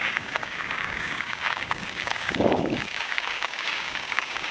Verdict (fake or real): fake